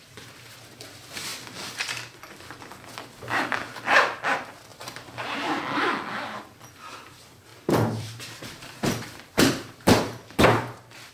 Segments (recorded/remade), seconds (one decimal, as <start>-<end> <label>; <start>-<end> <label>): 0.0-4.7 recorded; 4.7-5.6 remade; 5.6-7.5 recorded; 7.5-11.1 remade